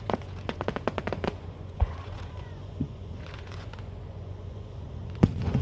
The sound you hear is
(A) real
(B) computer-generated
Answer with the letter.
B